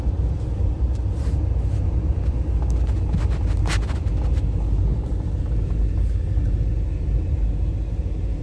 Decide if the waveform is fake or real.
real